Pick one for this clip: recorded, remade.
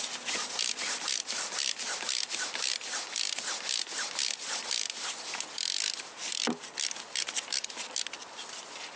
recorded